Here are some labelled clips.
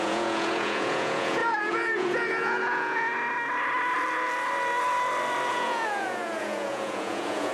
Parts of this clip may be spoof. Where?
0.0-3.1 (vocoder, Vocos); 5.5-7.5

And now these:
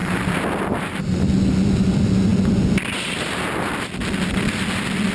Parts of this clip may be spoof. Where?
none